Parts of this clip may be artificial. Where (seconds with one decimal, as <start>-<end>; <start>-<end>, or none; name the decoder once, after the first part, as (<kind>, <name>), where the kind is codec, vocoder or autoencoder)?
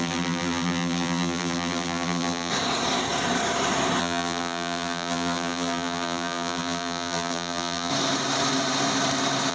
0.0-2.5 (vocoder, BigVGAN v2); 4.0-7.9